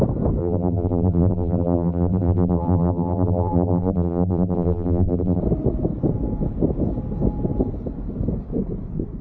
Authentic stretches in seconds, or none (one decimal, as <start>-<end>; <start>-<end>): 0.0-0.4; 5.4-9.2